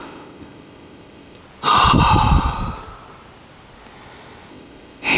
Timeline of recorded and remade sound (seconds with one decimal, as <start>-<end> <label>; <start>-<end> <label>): 0.0-1.4 remade; 1.4-4.5 recorded; 4.5-5.2 remade